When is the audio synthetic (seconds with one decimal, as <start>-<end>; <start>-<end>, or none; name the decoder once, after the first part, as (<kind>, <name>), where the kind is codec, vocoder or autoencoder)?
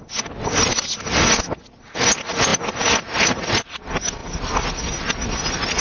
none